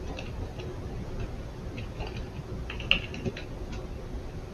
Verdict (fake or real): real